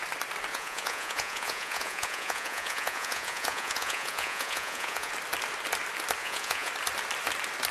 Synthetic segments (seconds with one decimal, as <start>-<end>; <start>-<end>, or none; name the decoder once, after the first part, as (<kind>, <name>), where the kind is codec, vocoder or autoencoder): 0.5-5.1 (vocoder, Vocos); 6.2-6.7